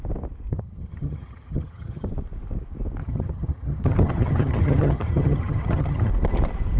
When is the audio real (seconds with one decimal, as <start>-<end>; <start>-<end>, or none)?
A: 0.0-0.5; 2.1-3.0; 6.1-6.8